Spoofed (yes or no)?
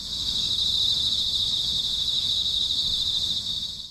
yes